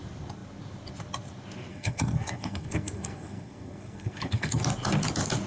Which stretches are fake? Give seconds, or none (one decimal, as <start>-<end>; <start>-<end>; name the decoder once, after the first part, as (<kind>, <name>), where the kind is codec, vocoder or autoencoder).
1.7-4.6 (codec, SNAC)